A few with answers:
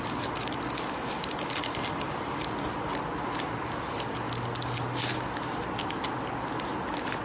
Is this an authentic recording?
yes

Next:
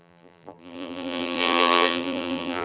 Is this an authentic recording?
no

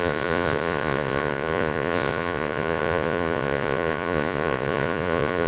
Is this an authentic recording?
no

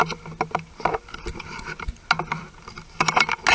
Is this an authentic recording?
yes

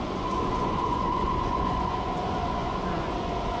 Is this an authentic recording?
no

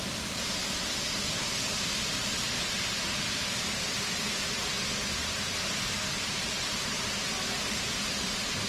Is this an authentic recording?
no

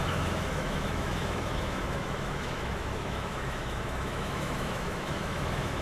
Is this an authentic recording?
no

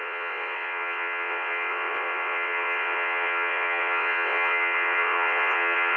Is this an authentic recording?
no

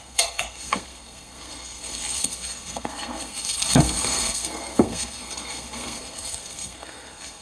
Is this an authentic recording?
no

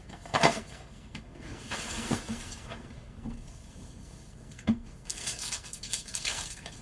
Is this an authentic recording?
no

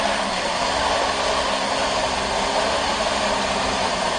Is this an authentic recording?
yes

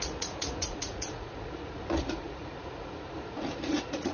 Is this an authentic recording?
no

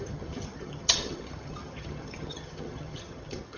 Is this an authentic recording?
no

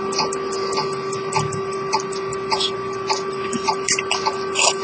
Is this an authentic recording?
yes